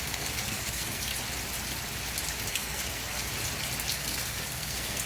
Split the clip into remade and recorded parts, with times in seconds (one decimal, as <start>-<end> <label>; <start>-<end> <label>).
0.0-1.1 remade; 1.1-2.5 recorded; 2.5-3.3 remade; 3.3-3.9 recorded; 3.9-5.1 remade